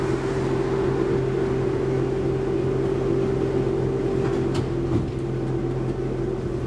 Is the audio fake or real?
real